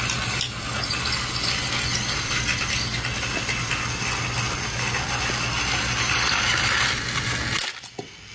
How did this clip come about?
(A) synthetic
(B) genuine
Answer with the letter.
B